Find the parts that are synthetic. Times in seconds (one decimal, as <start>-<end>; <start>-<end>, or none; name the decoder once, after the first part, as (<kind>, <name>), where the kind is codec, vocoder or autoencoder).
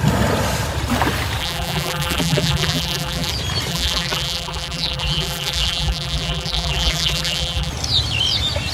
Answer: 1.4-3.3 (vocoder, BigVGAN v2); 3.7-7.7